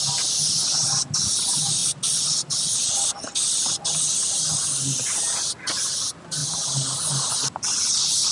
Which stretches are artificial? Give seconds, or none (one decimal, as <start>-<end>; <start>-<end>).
none